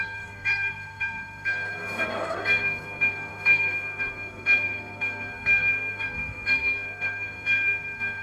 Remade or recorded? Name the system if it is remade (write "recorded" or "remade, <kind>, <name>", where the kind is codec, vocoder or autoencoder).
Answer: remade, codec, SNAC